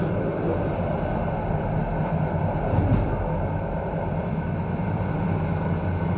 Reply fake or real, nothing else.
real